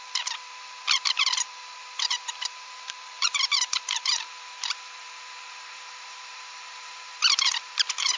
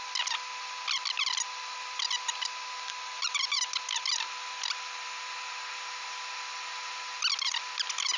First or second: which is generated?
first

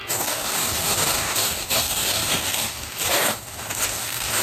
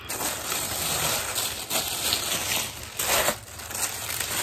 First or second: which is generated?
first